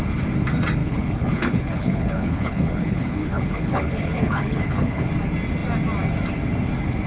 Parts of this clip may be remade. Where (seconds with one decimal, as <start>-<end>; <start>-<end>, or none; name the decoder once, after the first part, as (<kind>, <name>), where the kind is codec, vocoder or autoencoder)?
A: 0.8-5.1 (codec, HILCodec)